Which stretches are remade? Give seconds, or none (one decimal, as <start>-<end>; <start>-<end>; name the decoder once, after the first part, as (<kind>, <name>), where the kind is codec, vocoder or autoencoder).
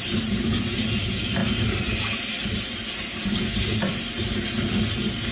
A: none